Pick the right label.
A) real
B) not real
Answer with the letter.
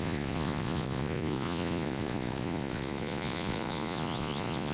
B